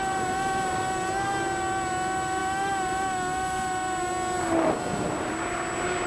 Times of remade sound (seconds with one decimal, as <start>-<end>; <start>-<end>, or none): none